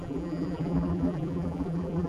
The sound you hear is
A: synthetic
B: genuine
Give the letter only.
A